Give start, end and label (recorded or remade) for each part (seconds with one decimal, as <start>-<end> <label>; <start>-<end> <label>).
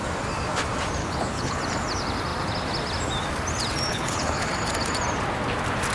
0.0-1.0 recorded; 1.0-1.6 remade; 1.6-3.9 recorded; 3.9-4.5 remade; 4.5-5.9 recorded